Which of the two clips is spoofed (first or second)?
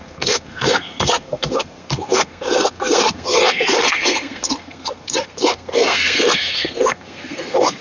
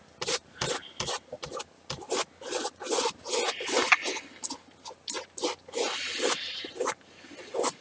first